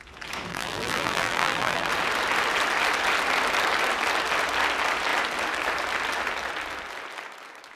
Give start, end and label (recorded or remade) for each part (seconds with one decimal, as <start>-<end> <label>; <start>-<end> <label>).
0.0-0.5 recorded; 0.5-1.9 remade; 1.9-7.8 recorded